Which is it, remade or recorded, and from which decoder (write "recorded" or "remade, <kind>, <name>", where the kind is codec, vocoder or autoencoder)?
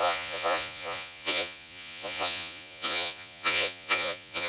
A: remade, vocoder, Vocos